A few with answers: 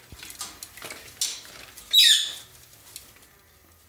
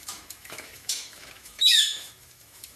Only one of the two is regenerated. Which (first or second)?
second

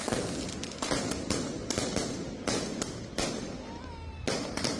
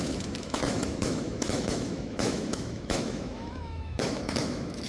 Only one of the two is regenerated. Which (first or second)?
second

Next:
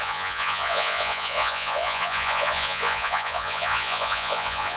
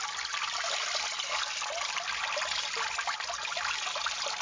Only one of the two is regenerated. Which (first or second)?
first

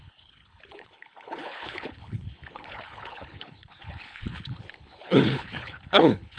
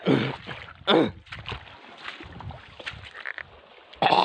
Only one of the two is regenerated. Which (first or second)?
first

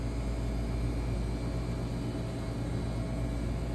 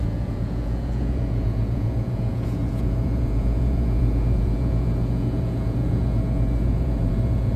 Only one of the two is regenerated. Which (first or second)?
second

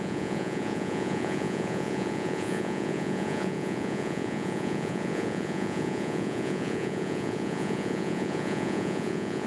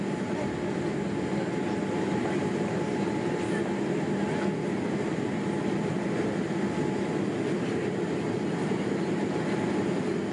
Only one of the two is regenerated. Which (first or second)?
first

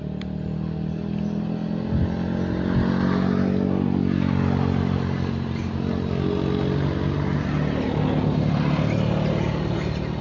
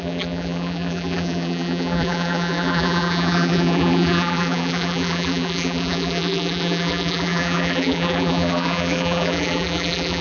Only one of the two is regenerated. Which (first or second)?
second